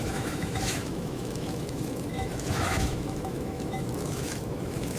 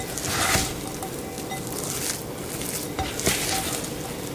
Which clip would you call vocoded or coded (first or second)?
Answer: first